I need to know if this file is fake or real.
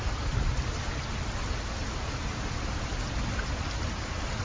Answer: real